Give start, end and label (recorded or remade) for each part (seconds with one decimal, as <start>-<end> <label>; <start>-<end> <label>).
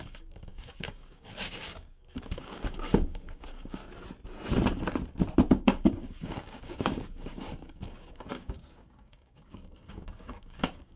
0.0-3.8 remade; 3.8-5.5 recorded; 5.5-11.0 remade